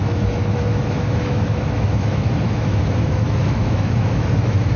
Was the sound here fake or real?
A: fake